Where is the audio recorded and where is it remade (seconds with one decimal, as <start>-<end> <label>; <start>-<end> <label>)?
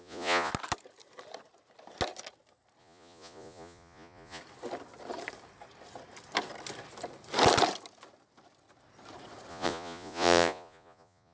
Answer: 0.0-0.5 remade; 0.5-2.8 recorded; 2.8-4.4 remade; 4.4-9.5 recorded; 9.5-11.3 remade